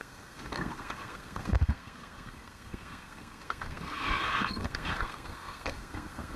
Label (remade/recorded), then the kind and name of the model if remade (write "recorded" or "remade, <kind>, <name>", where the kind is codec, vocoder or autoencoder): remade, codec, SNAC